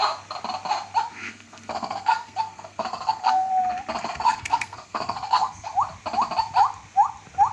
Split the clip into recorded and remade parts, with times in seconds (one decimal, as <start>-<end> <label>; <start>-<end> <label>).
0.0-1.1 recorded; 1.1-3.5 remade; 3.5-4.0 recorded; 4.0-5.7 remade; 5.7-7.5 recorded